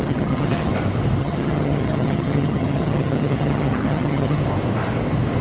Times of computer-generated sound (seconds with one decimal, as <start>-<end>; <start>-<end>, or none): 0.0-0.7; 1.2-4.4